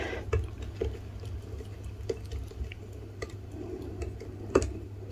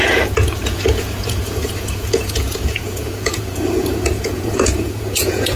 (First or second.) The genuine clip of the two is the first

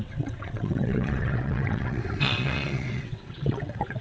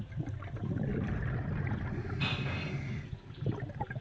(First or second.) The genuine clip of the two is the second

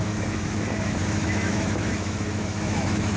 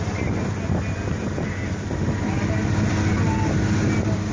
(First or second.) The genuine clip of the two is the second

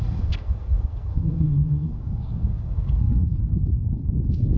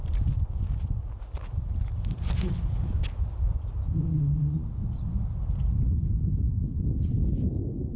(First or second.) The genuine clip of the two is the second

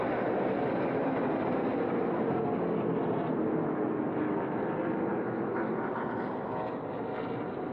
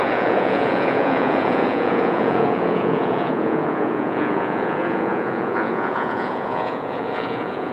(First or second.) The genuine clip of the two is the first